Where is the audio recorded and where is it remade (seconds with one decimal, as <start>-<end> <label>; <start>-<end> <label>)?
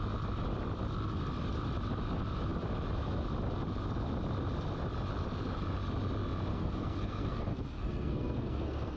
0.0-6.5 recorded; 6.5-9.0 remade